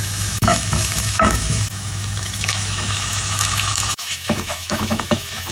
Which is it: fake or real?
fake